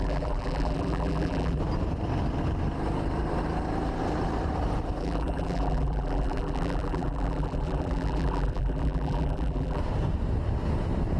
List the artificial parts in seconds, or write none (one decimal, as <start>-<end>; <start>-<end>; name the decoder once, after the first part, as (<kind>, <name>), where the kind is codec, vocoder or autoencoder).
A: 0.0-1.6 (vocoder, BigVGAN v2); 5.0-9.8